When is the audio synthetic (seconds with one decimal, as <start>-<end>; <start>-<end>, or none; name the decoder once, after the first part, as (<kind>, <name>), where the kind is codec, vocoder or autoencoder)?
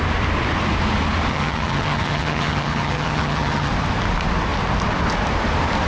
1.3-3.7 (vocoder, HiFi-GAN)